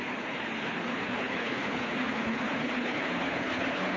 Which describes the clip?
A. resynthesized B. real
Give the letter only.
A